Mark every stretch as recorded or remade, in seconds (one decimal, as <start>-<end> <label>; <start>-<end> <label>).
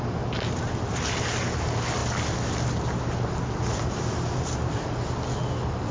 0.0-5.9 recorded